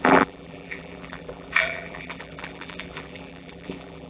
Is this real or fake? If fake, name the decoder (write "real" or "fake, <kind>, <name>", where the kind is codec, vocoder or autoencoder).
fake, vocoder, BigVGAN v2